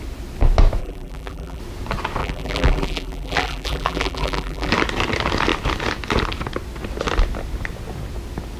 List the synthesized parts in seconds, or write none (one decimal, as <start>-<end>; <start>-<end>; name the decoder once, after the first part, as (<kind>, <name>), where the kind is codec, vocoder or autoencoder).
0.8-1.6 (vocoder, BigVGAN v2); 2.2-4.7